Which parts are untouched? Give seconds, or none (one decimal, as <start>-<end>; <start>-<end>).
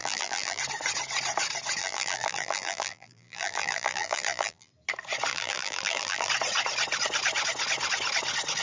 0.6-1.8; 4.7-5.3; 6.3-8.6